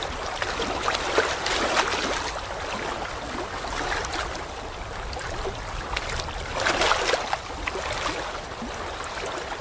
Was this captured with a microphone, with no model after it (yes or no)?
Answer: yes